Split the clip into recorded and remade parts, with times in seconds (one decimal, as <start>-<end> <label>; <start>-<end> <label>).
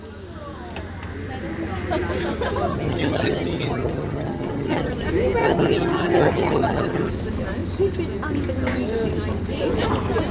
0.0-2.7 recorded; 2.7-4.9 remade; 4.9-5.4 recorded; 5.4-7.1 remade; 7.1-10.3 recorded